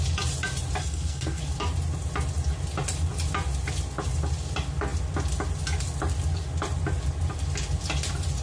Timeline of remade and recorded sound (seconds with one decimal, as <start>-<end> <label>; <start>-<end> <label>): 0.0-0.8 recorded; 0.8-1.4 remade; 1.4-8.4 recorded